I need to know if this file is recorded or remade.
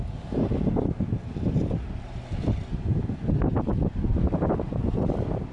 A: recorded